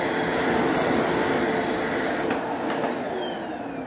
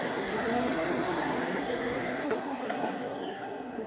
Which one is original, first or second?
first